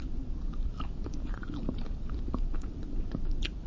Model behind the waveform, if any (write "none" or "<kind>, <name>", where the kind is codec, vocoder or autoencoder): vocoder, BigVGAN v2